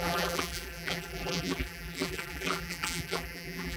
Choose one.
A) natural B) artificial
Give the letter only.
B